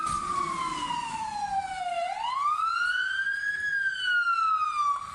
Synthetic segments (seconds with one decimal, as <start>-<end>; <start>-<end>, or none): none